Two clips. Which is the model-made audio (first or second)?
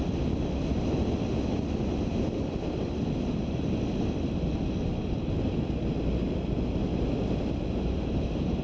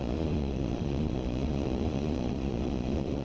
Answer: second